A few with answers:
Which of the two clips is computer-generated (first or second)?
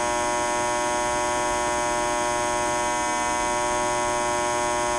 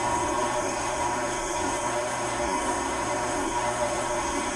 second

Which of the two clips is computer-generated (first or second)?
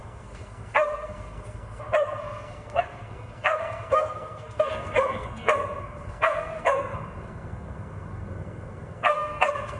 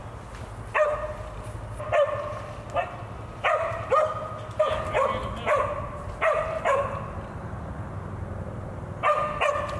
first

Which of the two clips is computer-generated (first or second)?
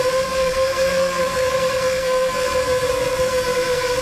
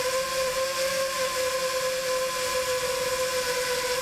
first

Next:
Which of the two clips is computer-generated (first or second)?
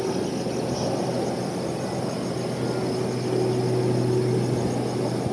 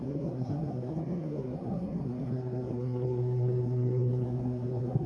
second